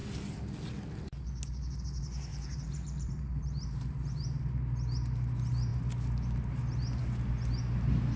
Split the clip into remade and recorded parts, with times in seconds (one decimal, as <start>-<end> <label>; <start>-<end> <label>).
0.0-2.3 recorded; 2.3-4.6 remade; 4.6-8.2 recorded